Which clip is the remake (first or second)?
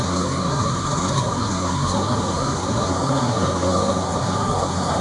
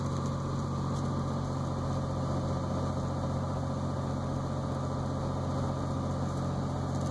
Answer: first